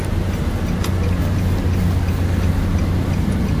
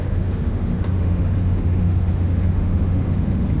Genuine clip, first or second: first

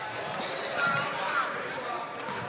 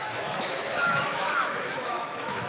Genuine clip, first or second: first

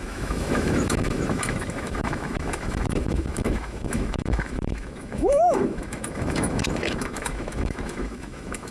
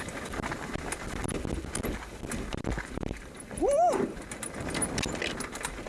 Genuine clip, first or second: second